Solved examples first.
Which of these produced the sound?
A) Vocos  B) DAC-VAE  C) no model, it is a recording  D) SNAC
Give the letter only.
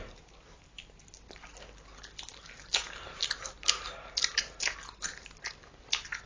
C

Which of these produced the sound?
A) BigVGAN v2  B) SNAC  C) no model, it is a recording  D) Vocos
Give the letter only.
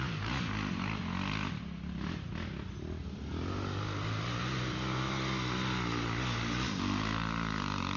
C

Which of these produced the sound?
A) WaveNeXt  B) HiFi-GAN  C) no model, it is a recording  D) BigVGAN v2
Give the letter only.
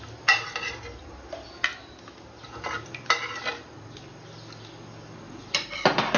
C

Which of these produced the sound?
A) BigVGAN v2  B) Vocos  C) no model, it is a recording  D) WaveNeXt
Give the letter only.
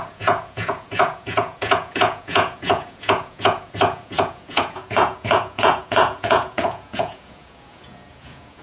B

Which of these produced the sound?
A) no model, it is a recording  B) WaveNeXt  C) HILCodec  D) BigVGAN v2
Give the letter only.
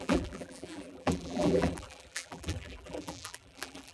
D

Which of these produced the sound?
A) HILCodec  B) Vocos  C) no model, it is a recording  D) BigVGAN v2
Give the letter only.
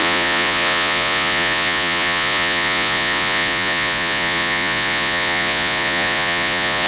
B